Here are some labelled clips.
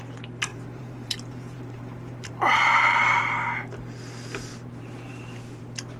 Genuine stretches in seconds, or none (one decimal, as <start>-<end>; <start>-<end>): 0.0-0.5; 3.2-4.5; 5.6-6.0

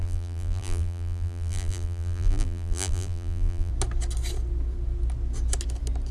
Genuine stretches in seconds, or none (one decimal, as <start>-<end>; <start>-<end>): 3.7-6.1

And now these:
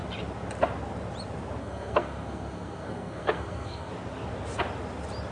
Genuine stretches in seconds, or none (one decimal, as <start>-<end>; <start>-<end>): 0.0-1.6; 3.9-5.3

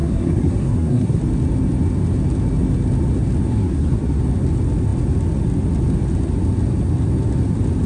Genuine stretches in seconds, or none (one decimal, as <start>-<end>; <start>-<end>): 1.2-3.5; 4.2-7.9

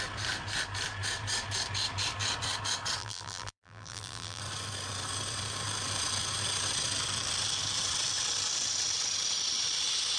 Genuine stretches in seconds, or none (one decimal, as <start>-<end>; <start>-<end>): 0.0-3.0; 4.4-10.2

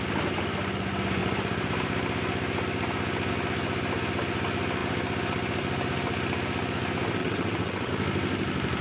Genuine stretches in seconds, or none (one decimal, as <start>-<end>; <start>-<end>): 0.0-7.2; 7.9-8.8